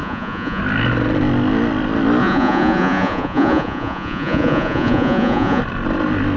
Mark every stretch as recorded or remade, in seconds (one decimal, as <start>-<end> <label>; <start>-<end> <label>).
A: 0.0-0.6 remade; 0.6-2.2 recorded; 2.2-5.6 remade; 5.6-6.4 recorded